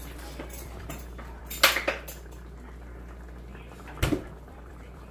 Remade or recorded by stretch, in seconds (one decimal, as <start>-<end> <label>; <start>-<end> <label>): 0.0-1.4 remade; 1.4-4.5 recorded; 4.5-5.1 remade